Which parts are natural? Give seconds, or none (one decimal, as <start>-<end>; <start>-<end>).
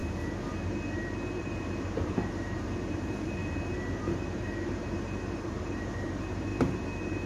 0.0-1.4; 3.4-4.0